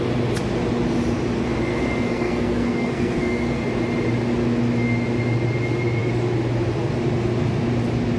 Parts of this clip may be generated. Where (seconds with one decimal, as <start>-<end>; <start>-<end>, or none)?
1.7-3.6